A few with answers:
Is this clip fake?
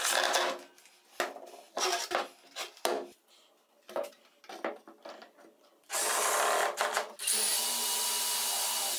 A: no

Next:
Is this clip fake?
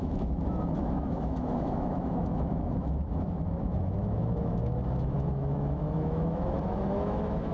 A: yes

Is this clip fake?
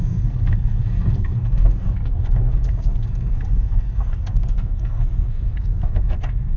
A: yes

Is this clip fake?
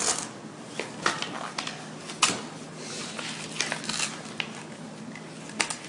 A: no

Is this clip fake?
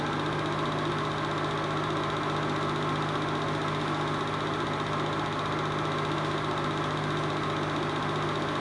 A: no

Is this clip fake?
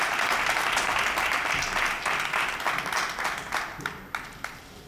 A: no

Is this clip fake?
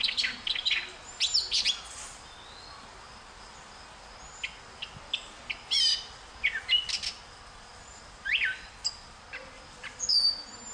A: no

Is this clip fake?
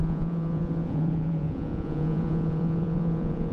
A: yes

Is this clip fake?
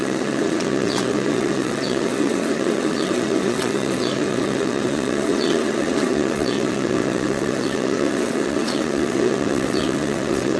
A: yes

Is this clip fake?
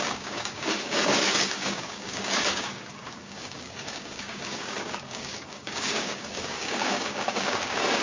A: yes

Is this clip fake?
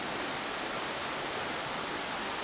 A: no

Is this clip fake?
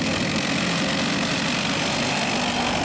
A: no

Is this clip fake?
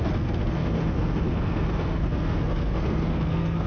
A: yes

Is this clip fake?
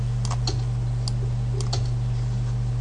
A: no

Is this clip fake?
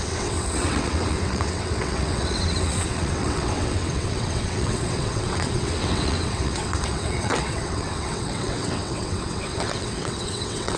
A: yes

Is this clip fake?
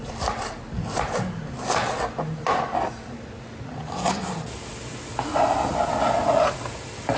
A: no